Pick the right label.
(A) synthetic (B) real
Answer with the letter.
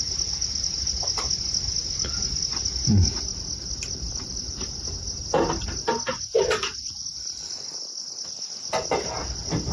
B